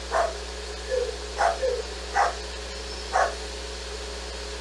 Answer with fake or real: real